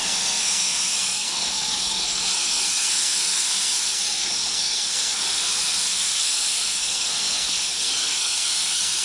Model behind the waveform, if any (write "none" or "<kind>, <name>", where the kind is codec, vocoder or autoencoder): codec, SNAC